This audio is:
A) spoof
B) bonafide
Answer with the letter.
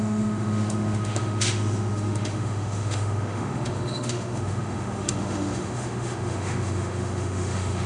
A